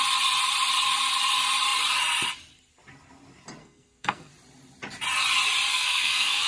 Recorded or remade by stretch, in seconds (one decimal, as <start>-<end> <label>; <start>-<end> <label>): 0.0-3.6 recorded; 3.6-4.3 remade; 4.3-5.7 recorded; 5.7-6.5 remade

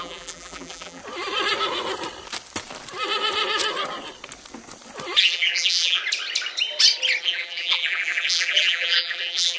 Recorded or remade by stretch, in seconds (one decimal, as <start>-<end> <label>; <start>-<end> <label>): 0.0-1.0 remade; 1.0-5.2 recorded; 5.2-6.0 remade; 6.0-7.2 recorded; 7.2-9.6 remade

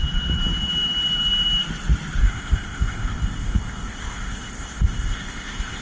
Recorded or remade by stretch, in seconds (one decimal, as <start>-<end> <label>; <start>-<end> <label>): 0.0-2.2 recorded; 2.2-5.8 remade

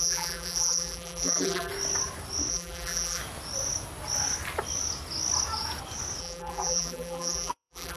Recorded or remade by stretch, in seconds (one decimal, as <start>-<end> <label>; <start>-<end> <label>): 0.0-1.7 remade; 1.7-2.5 recorded; 2.5-3.2 remade; 3.2-6.2 recorded; 6.2-8.0 remade

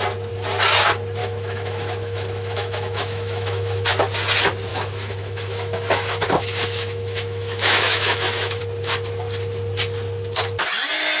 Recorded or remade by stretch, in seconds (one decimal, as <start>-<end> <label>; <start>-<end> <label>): 0.0-1.2 recorded; 1.2-3.9 remade; 3.9-4.7 recorded; 4.7-8.6 remade; 8.6-11.2 recorded